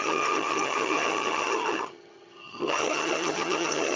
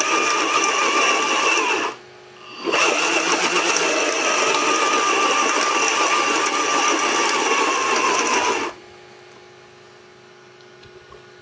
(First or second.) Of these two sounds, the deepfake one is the first